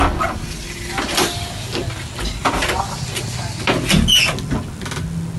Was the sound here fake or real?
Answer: real